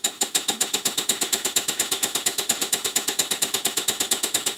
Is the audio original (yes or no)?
no